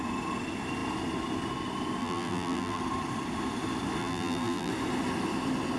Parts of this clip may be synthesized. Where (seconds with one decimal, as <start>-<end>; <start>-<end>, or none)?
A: 2.0-2.8; 4.0-4.7